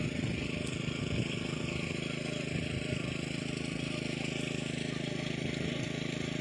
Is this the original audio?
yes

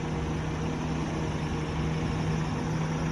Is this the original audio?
yes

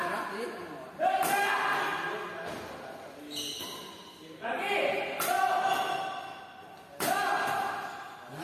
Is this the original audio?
yes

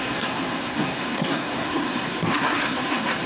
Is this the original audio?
no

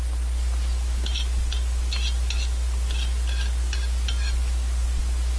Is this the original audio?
yes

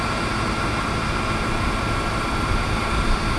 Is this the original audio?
yes